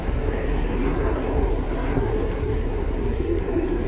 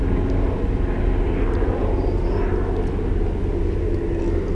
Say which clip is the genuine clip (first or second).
second